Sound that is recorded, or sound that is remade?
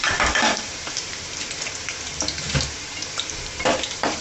remade